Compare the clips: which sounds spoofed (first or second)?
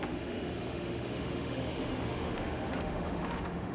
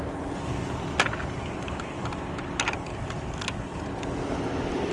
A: first